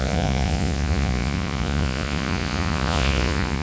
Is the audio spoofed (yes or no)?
yes